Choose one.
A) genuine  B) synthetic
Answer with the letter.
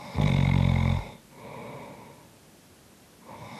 A